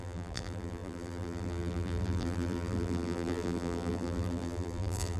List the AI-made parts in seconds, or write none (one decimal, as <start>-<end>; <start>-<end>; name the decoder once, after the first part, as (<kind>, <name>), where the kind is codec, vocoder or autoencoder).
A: 0.0-5.2 (vocoder, BigVGAN v2)